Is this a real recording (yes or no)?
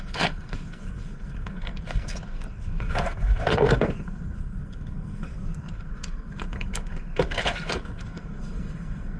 no